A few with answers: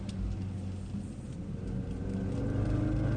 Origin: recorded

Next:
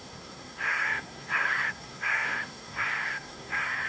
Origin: remade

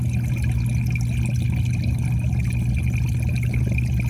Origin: recorded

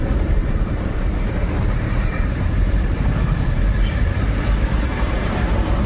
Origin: remade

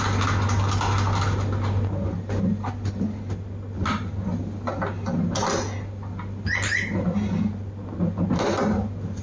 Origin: recorded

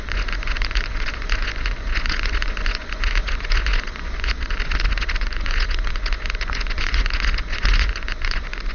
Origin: remade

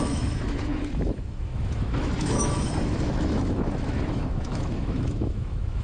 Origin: remade